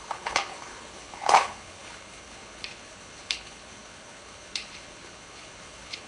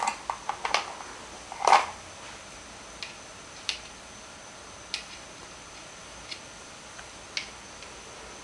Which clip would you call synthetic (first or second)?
first